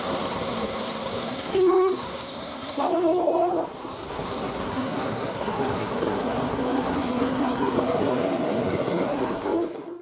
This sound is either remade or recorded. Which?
remade